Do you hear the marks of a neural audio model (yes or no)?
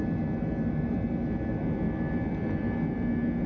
no